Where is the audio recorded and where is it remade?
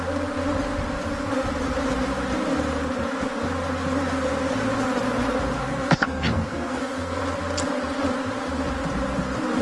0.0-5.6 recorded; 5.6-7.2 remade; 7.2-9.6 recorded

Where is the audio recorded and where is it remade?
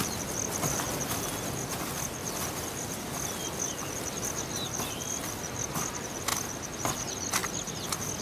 0.0-8.2 recorded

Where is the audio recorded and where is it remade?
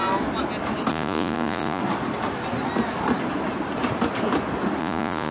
0.0-0.9 recorded; 0.9-1.8 remade; 1.8-4.8 recorded; 4.8-5.3 remade